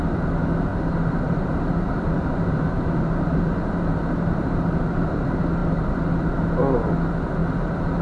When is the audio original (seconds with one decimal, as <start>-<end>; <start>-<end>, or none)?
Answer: 0.0-0.7; 5.1-5.6; 6.3-7.4